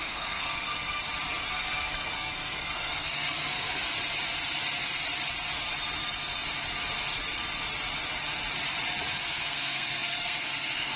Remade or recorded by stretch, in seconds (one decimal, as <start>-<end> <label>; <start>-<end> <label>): 0.0-1.0 remade; 1.0-1.5 recorded; 1.5-3.9 remade; 3.9-9.1 recorded; 9.1-11.0 remade